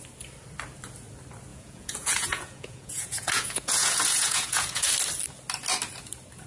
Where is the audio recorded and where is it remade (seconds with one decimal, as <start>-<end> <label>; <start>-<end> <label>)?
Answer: 0.0-1.5 recorded; 1.5-4.9 remade; 4.9-6.5 recorded